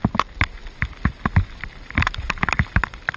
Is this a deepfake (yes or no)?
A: no